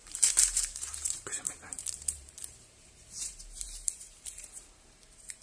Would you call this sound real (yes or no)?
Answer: no